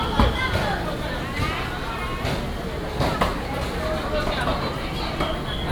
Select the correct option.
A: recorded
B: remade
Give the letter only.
A